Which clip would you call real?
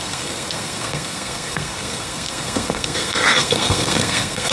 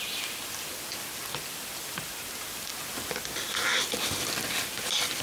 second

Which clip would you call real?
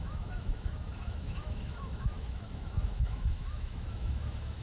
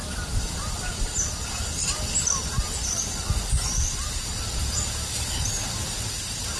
second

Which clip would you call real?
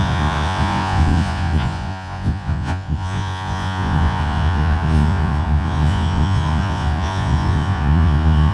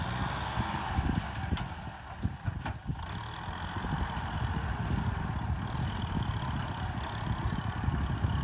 second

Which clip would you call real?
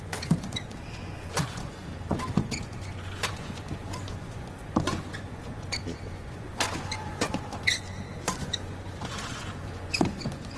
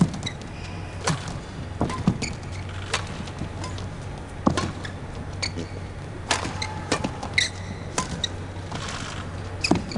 second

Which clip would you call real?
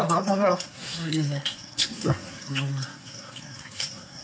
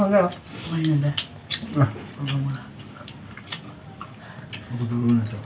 second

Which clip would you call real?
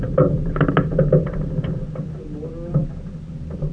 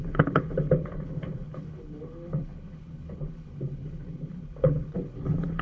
first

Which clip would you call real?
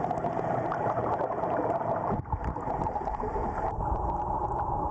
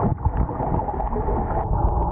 second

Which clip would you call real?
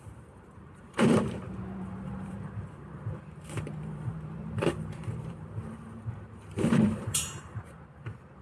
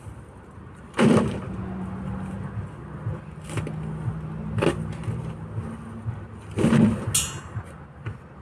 second